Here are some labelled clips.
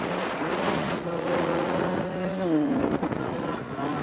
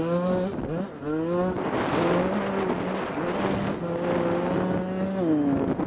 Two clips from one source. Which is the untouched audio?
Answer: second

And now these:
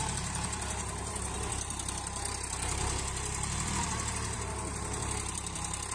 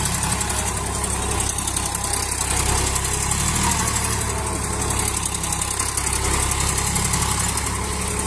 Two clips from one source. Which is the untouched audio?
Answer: second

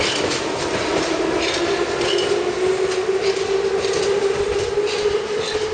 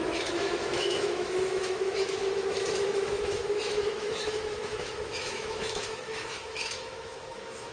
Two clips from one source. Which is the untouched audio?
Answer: first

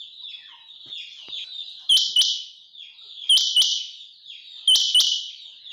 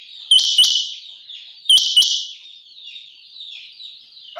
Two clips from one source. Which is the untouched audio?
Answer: first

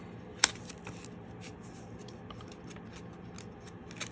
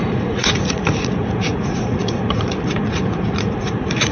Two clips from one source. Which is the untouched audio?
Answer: first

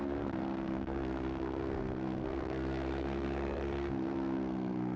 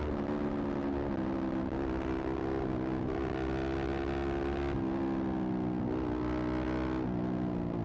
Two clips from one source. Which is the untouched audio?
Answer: second